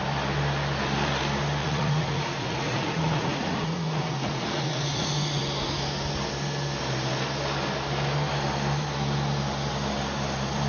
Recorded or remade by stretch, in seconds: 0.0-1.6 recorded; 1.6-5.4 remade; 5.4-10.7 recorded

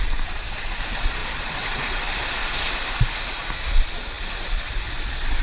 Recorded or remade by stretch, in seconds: 0.0-1.2 recorded; 1.2-1.7 remade; 1.7-5.4 recorded

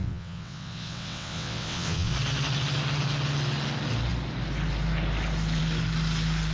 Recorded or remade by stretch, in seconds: 0.0-2.1 remade; 2.1-6.5 recorded

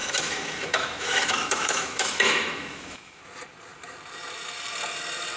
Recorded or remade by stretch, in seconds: 0.0-3.2 remade; 3.2-5.4 recorded